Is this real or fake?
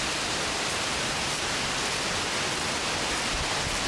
real